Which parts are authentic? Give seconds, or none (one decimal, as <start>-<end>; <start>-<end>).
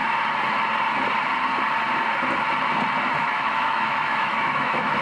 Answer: 0.0-3.2